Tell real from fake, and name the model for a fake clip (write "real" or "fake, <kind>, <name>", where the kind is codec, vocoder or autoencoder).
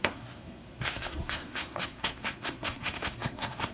fake, codec, SNAC